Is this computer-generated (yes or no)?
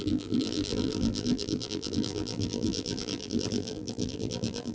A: yes